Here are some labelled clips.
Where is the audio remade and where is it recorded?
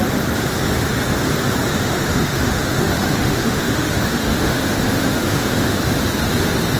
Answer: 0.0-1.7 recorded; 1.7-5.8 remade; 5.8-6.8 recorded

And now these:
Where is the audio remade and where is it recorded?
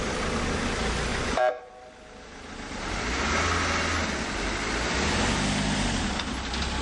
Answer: 0.0-1.1 recorded; 1.1-1.7 remade; 1.7-6.8 recorded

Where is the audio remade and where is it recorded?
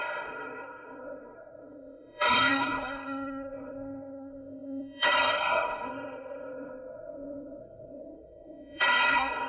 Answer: 0.0-9.5 remade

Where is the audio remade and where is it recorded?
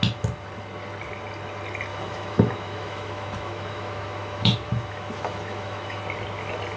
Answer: 0.0-1.9 recorded; 1.9-6.0 remade; 6.0-6.8 recorded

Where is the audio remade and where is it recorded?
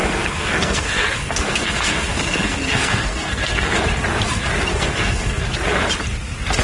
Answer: 0.0-3.8 remade; 3.8-4.7 recorded; 4.7-5.4 remade; 5.4-6.6 recorded